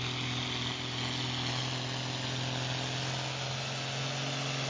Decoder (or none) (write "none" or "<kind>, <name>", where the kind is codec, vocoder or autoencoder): none